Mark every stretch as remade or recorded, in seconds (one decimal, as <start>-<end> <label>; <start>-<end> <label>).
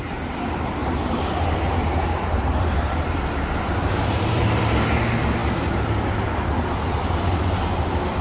0.0-0.8 recorded; 0.8-4.6 remade; 4.6-8.2 recorded